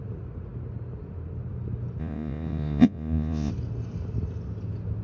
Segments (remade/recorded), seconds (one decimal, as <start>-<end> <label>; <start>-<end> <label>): 0.0-2.0 recorded; 2.0-3.5 remade; 3.5-5.0 recorded